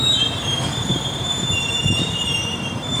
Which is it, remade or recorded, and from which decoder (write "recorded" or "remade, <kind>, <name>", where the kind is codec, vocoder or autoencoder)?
remade, vocoder, BigVGAN v2